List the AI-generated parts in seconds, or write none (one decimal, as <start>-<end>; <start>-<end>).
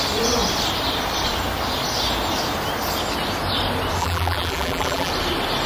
4.0-5.1